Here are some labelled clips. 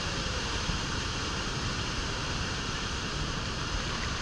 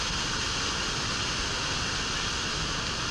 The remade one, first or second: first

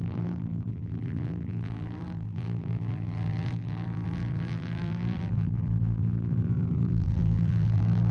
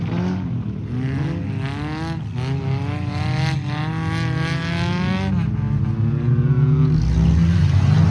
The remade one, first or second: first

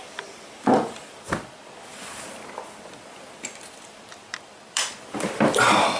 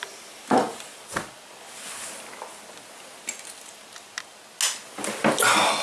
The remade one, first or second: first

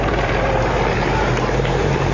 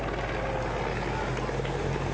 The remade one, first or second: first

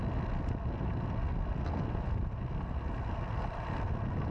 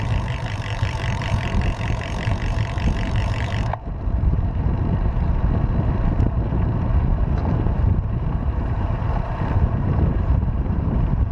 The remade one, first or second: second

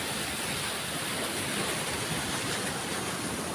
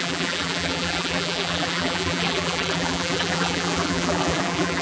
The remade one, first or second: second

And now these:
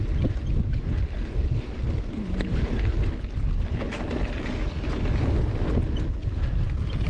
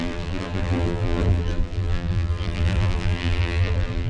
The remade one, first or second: second